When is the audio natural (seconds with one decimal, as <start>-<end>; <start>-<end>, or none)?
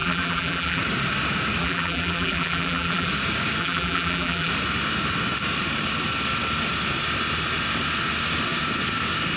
0.8-1.6; 3.1-3.6; 4.5-9.4